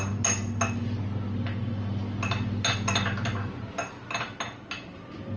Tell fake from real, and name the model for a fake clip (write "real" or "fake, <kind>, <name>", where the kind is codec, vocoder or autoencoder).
real